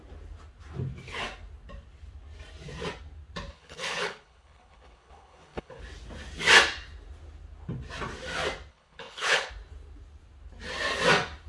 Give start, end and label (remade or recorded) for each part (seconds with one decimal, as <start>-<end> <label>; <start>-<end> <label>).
0.0-3.5 recorded; 3.5-5.8 remade; 5.8-8.7 recorded; 8.7-9.5 remade; 9.5-11.5 recorded

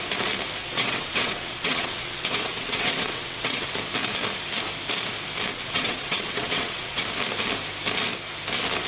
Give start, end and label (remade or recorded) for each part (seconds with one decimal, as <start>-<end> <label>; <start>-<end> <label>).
0.0-0.6 recorded; 0.6-3.7 remade; 3.7-5.5 recorded; 5.5-7.0 remade; 7.0-8.9 recorded